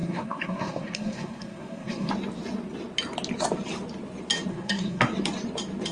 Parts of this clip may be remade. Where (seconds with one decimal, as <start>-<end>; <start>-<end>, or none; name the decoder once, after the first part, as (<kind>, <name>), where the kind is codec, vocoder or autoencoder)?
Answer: 0.0-2.1 (codec, SNAC); 4.5-5.0